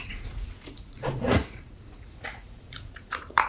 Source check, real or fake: fake